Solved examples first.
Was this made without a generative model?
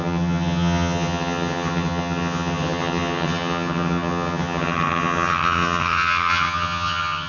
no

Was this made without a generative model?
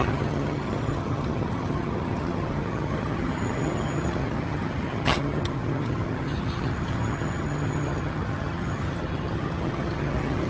no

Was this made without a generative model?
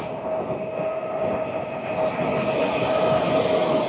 yes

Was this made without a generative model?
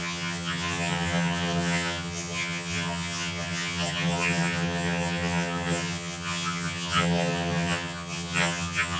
no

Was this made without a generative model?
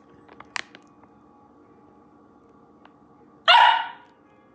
yes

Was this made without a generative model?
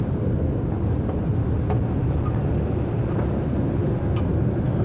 yes